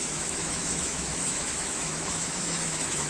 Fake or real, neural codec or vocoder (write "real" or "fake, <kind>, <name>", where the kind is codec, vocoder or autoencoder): fake, autoencoder, DAC-VAE